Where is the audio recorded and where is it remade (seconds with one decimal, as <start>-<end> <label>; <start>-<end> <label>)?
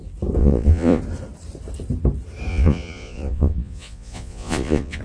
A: 0.0-0.4 recorded; 0.4-1.0 remade; 1.0-2.5 recorded; 2.5-5.0 remade